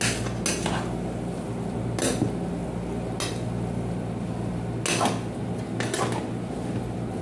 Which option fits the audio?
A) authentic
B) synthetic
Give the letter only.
A